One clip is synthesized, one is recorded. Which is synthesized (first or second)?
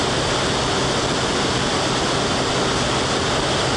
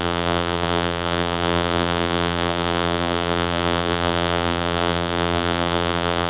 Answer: second